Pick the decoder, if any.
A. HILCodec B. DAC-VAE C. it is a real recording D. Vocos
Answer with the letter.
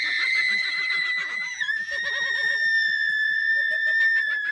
D